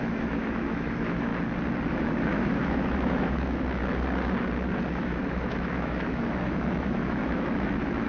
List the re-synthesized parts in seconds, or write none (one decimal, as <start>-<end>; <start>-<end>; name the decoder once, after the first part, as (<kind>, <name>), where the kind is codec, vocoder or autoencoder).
0.0-1.3 (autoencoder, DAC-VAE); 1.9-3.8; 4.9-8.1